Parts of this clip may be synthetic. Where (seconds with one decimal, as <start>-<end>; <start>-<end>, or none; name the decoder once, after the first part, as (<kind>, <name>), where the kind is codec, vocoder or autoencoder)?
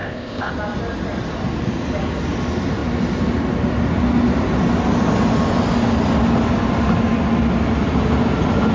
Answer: 0.0-0.5 (codec, ZipCodec)